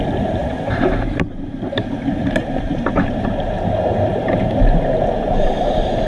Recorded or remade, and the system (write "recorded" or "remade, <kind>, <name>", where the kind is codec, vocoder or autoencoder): remade, vocoder, BigVGAN v2